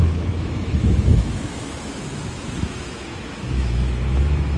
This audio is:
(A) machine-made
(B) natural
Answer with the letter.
A